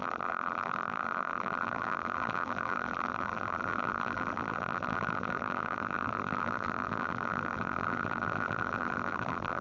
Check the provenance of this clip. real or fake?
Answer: fake